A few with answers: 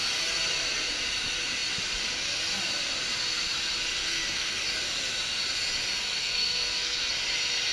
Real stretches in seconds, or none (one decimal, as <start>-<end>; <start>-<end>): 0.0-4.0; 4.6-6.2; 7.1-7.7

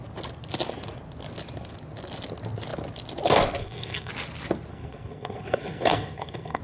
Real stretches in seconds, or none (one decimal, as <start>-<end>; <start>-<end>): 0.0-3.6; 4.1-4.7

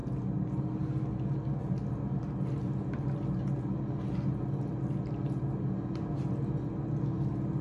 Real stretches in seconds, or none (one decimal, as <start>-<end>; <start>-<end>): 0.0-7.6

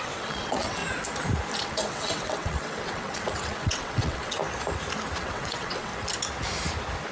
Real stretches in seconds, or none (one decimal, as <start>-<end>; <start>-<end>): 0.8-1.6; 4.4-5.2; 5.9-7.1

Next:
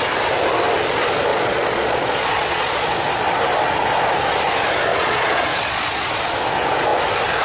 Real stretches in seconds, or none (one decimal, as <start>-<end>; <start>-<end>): 0.0-1.3; 2.9-4.9; 6.1-7.4

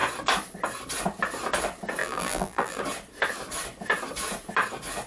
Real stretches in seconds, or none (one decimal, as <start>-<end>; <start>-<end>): 0.0-2.0; 2.8-5.1